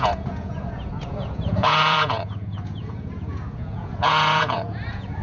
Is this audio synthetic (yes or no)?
yes